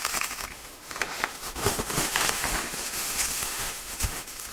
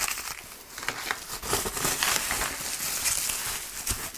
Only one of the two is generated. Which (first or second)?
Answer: first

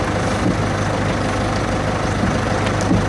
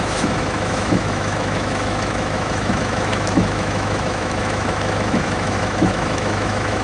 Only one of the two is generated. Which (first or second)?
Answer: second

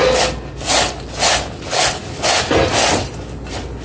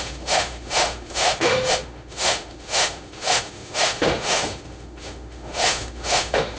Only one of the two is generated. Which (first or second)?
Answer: second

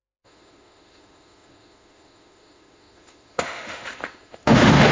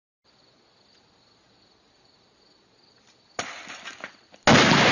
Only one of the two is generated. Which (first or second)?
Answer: first